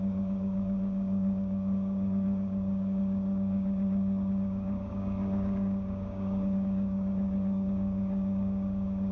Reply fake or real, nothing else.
fake